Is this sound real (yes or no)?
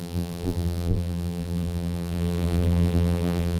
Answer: no